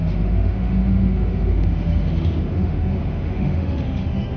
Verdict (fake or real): fake